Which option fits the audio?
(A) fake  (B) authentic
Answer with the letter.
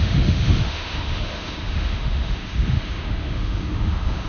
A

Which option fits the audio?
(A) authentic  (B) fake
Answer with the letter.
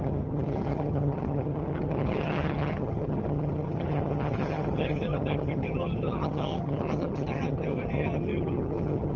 B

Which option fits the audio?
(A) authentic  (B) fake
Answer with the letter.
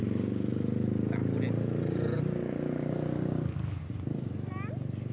A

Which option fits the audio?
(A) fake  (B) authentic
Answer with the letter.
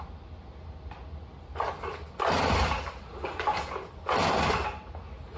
B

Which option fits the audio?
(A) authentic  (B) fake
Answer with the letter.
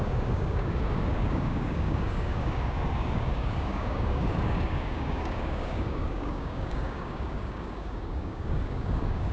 B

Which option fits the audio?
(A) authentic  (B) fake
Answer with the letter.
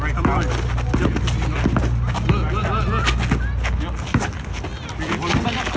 A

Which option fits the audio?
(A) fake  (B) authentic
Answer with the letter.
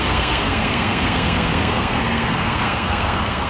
A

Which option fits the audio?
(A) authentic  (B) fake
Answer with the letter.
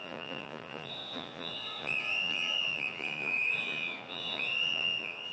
B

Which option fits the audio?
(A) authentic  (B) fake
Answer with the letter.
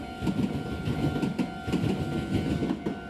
A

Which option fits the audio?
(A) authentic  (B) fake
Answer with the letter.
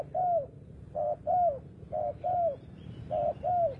A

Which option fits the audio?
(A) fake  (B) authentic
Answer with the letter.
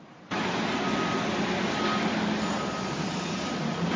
B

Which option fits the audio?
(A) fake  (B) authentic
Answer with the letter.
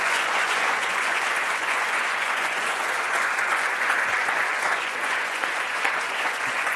A